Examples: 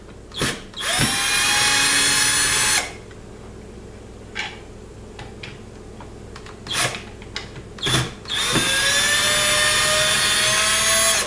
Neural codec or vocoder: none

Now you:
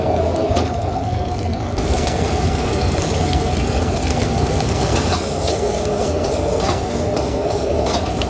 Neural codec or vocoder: codec, SNAC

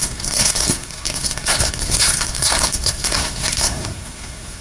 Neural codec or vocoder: codec, SNAC